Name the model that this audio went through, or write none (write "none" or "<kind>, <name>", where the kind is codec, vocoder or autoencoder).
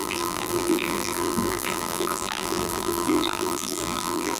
vocoder, BigVGAN v2